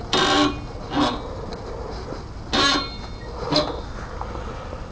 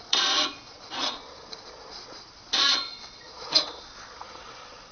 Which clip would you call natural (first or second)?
first